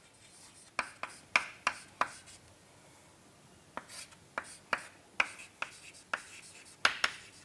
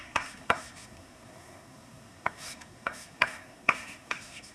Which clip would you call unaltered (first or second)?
first